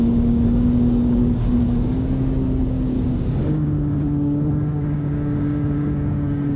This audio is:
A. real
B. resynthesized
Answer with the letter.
B